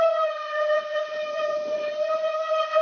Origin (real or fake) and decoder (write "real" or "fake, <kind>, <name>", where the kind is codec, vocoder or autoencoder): fake, vocoder, Vocos